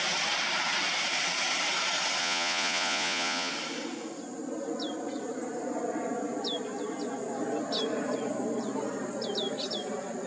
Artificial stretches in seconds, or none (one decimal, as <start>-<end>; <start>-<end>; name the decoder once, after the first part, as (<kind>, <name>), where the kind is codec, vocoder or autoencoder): 2.2-3.5 (vocoder, Vocos)